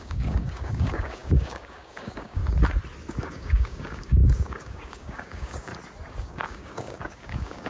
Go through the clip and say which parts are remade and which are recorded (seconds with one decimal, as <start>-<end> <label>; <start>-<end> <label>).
0.0-2.4 remade; 2.4-3.1 recorded; 3.1-5.7 remade; 5.7-6.2 recorded; 6.2-7.7 remade